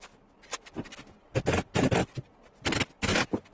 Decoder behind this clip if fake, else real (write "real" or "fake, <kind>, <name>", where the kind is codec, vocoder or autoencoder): real